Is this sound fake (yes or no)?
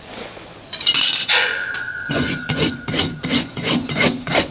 yes